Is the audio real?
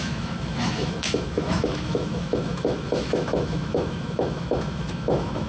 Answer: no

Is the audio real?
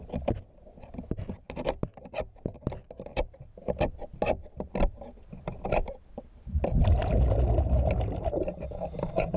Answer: yes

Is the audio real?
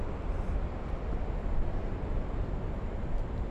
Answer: yes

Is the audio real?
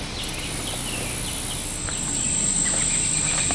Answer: yes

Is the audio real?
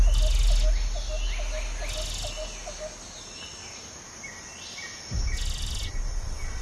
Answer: yes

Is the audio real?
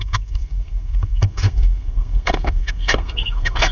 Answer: no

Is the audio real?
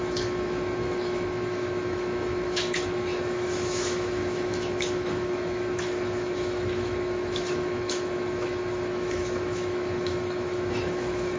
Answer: no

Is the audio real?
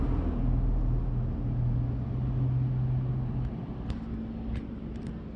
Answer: yes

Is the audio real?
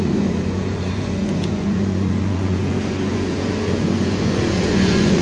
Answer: no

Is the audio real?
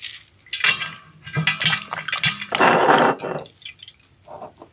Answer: yes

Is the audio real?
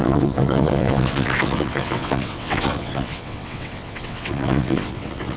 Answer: no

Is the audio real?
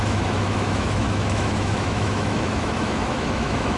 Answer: no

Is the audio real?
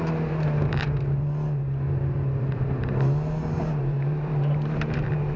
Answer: no